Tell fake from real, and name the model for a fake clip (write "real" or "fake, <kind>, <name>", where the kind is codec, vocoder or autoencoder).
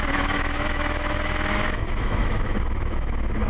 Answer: fake, autoencoder, DAC-VAE